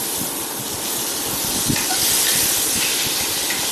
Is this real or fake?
real